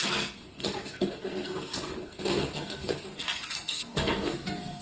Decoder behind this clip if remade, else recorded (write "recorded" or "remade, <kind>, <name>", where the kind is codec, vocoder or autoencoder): remade, codec, SNAC